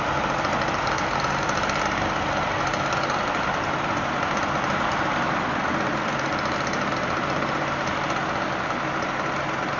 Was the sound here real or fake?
real